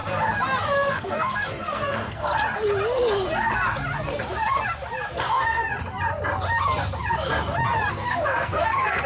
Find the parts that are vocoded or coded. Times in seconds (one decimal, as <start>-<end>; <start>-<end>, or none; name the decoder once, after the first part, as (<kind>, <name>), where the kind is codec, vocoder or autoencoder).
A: 0.9-2.3 (codec, SNAC); 5.2-5.7; 7.9-9.1